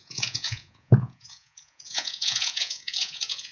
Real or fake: fake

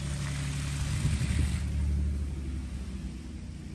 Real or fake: real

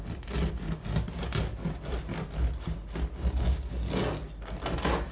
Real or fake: real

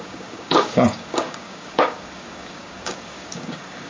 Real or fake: fake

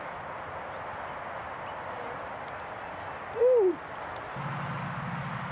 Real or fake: real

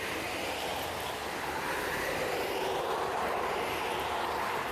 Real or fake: real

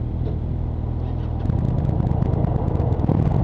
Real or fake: real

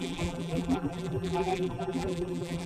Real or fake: fake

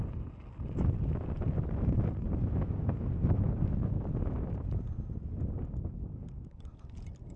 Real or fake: real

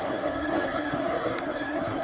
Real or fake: fake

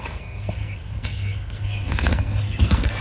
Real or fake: fake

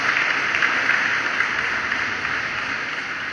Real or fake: real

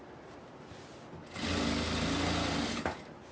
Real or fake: real